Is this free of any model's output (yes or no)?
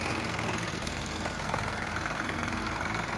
no